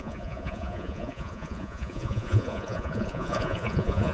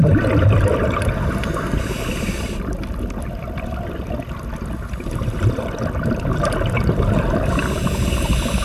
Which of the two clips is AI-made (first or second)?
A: first